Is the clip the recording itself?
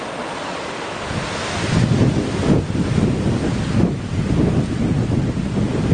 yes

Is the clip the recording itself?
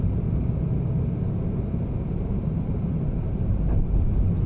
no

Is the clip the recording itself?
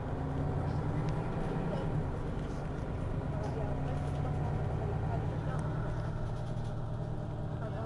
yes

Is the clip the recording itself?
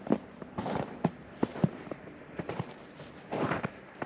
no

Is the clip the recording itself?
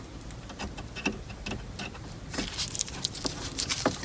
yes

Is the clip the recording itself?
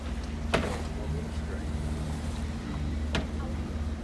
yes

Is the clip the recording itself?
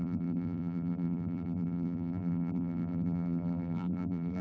no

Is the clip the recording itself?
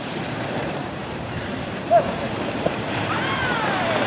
no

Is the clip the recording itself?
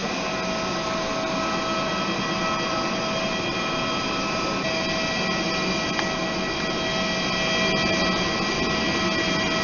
yes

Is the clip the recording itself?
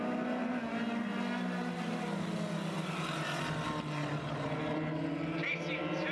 yes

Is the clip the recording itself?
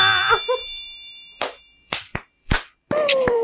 no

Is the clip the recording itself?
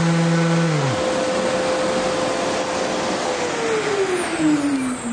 yes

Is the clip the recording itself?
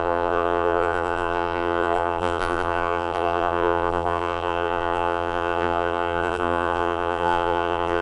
no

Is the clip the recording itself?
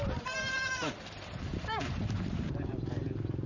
no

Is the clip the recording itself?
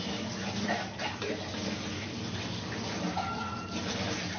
yes